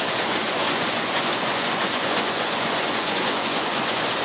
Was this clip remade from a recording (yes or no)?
yes